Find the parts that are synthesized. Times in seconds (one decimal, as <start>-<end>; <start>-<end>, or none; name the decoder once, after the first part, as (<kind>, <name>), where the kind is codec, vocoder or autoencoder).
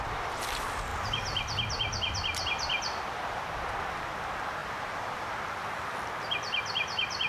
4.6-5.4 (vocoder, BigVGAN v2)